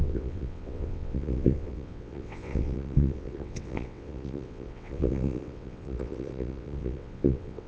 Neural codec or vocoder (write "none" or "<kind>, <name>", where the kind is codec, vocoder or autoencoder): vocoder, WaveNeXt